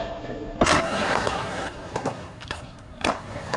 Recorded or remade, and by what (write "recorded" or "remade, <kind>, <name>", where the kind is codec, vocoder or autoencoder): remade, codec, SNAC